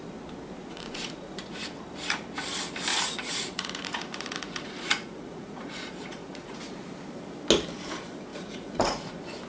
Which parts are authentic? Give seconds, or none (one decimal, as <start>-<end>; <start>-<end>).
0.0-0.6; 1.6-2.9; 6.6-8.3; 9.1-9.5